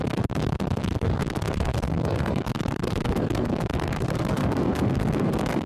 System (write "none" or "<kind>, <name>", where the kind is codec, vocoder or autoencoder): codec, SNAC